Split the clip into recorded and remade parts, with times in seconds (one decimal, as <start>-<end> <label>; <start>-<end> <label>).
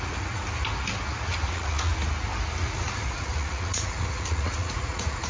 0.0-0.4 remade; 0.4-1.3 recorded; 1.3-1.9 remade; 1.9-2.6 recorded; 2.6-5.3 remade